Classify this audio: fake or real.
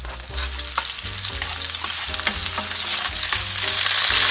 real